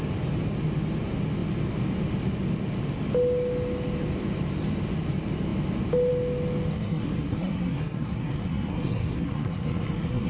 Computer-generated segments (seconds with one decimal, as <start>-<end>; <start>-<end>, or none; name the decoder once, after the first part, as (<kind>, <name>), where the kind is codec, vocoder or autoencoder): 6.7-10.3 (codec, SNAC)